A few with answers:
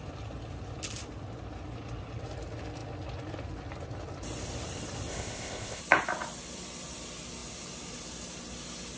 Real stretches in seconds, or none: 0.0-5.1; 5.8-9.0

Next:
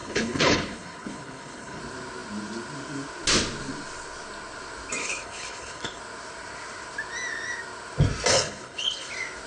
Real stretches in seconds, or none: 1.8-5.0; 6.0-8.3; 9.1-9.5